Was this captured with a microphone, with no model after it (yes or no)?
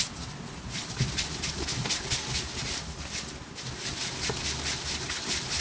yes